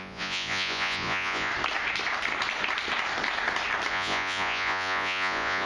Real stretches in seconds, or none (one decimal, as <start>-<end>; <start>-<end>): 1.5-3.9